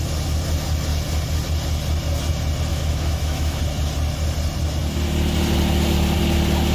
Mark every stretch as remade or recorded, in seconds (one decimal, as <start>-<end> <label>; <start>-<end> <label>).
0.0-2.7 recorded; 2.7-3.6 remade; 3.6-6.7 recorded